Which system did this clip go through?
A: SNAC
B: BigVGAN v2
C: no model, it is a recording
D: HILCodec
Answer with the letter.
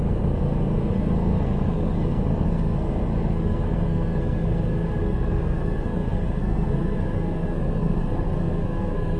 A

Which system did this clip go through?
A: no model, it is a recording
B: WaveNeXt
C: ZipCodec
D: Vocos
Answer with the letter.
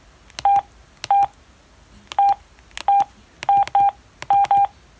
A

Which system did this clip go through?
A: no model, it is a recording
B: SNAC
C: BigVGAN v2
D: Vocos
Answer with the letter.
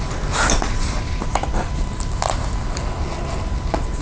A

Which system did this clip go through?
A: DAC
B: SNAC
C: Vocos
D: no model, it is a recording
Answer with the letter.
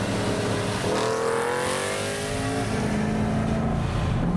D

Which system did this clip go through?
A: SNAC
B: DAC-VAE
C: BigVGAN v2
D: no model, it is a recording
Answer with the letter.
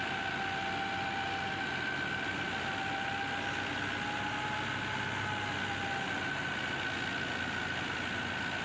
D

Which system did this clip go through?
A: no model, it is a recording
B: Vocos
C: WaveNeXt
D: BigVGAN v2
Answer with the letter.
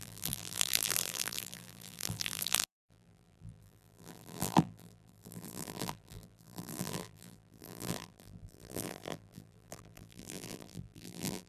D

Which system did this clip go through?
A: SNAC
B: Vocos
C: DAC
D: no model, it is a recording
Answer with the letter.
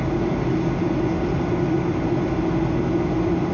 D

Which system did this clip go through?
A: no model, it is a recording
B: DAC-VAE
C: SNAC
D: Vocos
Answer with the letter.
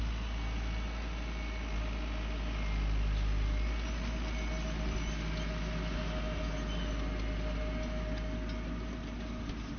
A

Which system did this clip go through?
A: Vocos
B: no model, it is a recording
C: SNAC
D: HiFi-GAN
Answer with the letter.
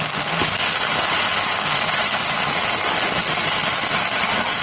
B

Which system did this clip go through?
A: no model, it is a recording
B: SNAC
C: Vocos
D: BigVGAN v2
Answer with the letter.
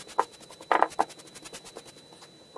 A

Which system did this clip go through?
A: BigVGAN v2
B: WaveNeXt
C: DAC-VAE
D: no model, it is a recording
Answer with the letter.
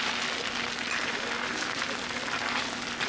D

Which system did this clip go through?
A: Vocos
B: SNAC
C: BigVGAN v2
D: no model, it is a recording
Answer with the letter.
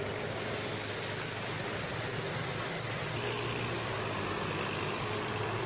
D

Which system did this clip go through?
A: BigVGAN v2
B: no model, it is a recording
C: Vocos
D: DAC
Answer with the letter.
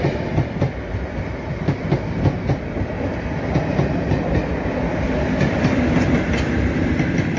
B